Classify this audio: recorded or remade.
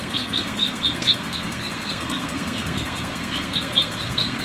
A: remade